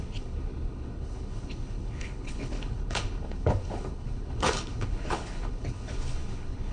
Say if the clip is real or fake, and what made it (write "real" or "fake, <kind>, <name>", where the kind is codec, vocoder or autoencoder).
fake, codec, HILCodec